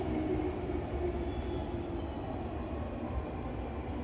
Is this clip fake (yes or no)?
no